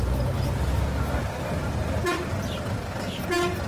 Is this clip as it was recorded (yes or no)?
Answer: yes